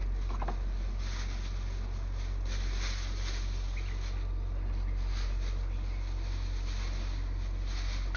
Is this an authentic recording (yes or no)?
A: yes